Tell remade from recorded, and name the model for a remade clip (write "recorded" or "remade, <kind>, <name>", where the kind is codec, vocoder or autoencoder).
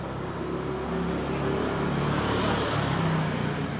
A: recorded